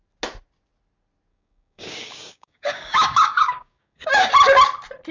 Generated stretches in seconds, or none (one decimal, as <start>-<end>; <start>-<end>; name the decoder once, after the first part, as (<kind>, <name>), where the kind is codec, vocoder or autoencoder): 1.3-4.3 (codec, DAC)